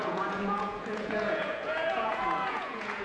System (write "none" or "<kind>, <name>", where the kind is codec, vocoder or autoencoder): vocoder, Vocos